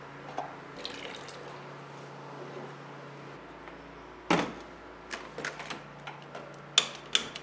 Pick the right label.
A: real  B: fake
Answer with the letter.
A